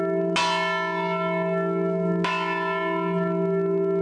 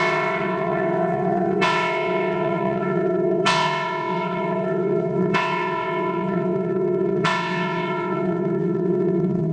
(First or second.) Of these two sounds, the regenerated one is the second